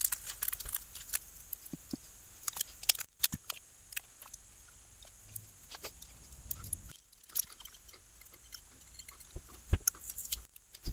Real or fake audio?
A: real